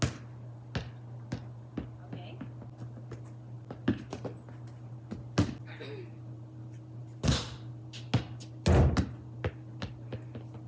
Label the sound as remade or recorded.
recorded